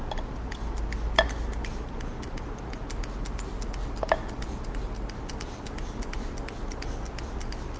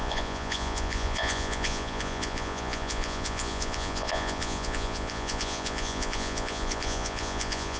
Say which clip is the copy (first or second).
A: second